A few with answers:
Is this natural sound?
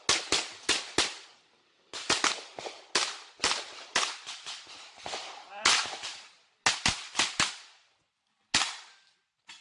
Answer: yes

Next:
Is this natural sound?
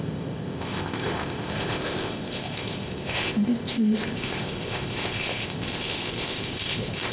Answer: no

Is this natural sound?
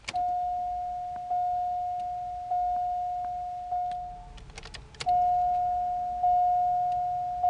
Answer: yes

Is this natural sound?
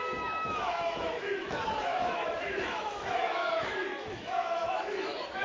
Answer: no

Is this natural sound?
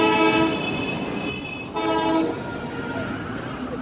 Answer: yes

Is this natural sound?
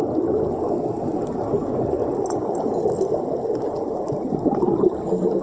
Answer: yes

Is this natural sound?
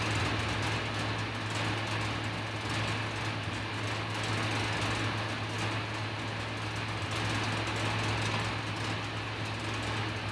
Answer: yes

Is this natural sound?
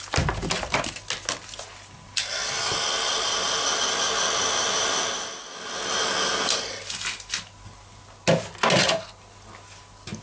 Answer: yes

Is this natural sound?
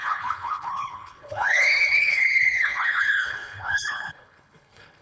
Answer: no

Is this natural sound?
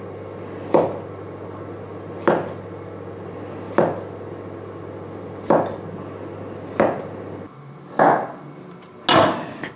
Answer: yes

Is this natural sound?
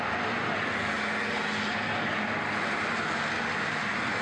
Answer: yes